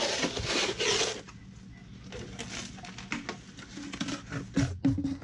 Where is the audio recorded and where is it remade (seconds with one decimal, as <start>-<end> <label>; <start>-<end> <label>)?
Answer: 0.0-5.2 recorded